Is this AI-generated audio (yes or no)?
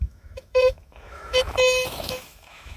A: yes